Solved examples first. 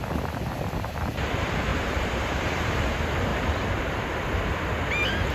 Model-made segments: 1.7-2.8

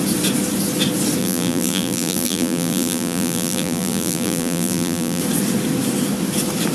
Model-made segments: 1.2-5.2

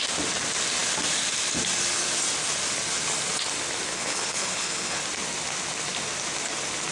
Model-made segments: 3.9-5.0

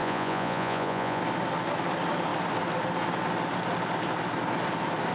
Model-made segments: 0.0-1.2

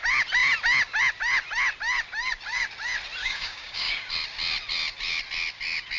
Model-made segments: 3.2-4.1

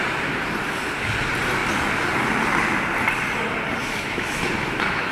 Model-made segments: 3.8-5.1

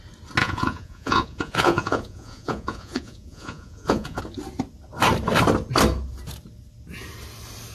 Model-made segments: 0.4-4.2

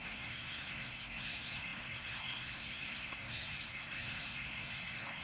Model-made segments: 0.0-5.2